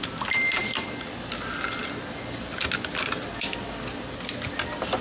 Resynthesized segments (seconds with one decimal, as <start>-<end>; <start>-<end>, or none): 0.6-1.3